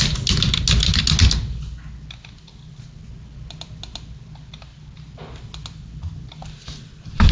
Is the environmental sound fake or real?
real